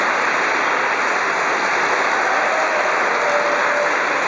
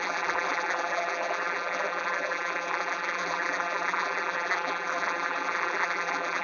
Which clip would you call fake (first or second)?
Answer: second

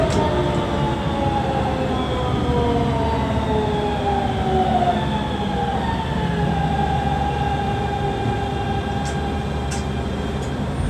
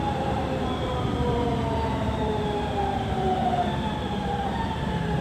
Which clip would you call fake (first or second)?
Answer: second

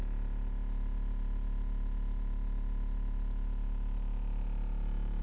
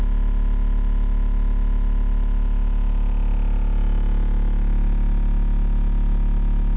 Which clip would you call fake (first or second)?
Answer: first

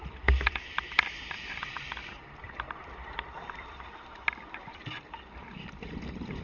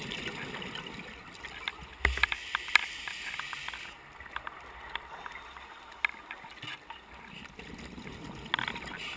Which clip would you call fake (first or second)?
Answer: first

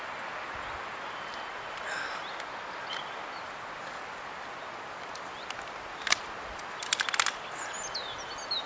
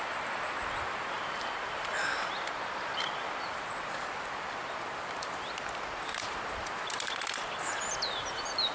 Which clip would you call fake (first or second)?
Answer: second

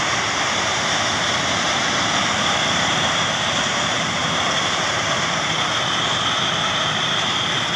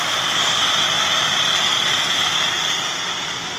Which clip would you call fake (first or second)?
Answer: first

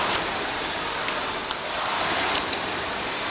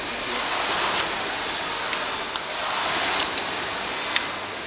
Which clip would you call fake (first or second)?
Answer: first